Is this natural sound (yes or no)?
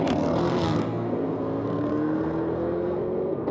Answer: no